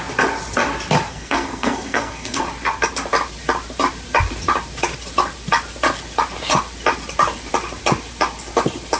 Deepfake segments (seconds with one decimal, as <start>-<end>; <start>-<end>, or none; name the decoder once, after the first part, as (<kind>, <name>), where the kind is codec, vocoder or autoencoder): 1.1-2.4 (codec, SNAC)